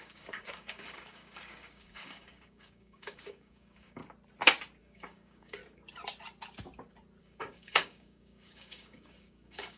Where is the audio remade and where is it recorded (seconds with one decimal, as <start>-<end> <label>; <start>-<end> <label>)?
0.0-4.0 remade; 4.0-4.8 recorded; 4.8-5.6 remade; 5.6-7.2 recorded; 7.2-9.8 remade